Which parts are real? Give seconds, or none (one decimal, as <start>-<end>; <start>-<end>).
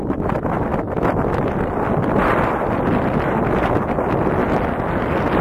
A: 0.0-5.4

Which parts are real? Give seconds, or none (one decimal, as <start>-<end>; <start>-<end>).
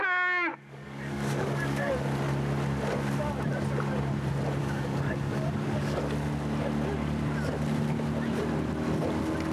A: 0.0-0.5; 1.9-4.6; 6.0-9.5